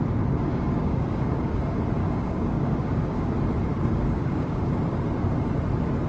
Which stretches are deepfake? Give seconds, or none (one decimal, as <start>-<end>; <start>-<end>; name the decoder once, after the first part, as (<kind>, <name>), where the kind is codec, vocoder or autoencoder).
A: 0.5-1.5 (codec, DAC); 2.0-3.3; 3.7-4.8